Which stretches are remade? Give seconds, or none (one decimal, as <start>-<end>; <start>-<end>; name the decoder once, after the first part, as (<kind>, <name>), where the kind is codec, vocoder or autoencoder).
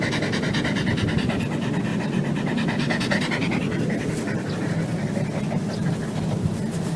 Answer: none